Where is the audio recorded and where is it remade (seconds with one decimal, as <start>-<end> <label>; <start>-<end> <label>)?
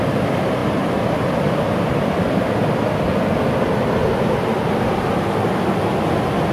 0.0-6.5 recorded